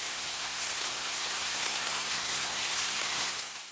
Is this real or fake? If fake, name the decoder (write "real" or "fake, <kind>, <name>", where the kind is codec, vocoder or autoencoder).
fake, codec, SNAC